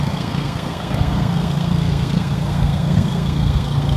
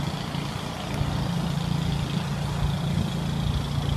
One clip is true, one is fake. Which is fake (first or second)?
first